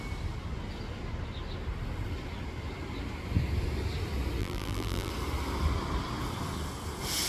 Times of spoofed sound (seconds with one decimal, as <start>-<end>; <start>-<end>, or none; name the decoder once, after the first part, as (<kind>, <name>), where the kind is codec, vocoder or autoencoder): 4.4-5.1 (vocoder, BigVGAN v2)